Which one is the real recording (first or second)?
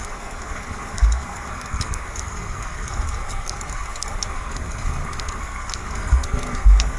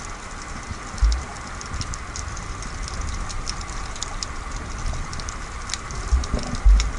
second